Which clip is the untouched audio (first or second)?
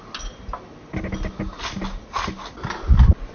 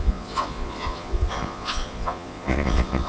first